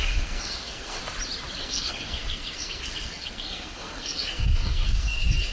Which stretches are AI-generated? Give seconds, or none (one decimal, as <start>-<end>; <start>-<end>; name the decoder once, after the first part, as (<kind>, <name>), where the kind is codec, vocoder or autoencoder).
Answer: 0.0-1.0 (codec, SNAC); 1.6-5.5